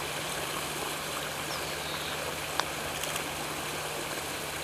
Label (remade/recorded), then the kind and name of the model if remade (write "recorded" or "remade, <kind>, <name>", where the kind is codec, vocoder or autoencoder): recorded